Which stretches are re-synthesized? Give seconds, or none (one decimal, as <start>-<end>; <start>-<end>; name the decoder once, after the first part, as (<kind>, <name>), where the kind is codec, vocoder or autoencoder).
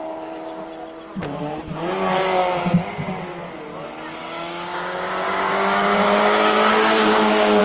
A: 2.4-3.2 (codec, DAC); 4.2-7.6